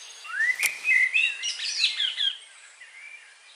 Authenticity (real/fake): fake